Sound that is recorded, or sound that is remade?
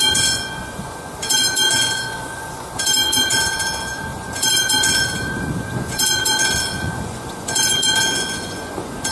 remade